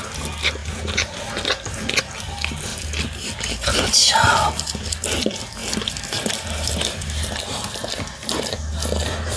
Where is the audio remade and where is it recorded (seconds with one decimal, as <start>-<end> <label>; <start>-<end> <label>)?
0.0-9.4 recorded